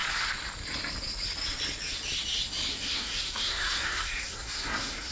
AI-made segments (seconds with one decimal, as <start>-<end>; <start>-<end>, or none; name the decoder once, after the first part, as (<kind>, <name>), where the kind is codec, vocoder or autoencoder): 2.7-5.1 (codec, SNAC)